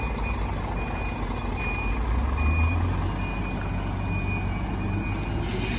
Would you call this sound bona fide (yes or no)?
yes